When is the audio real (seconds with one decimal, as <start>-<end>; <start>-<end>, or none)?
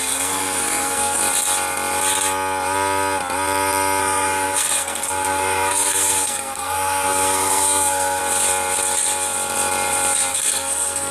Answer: 1.2-4.0; 8.2-10.3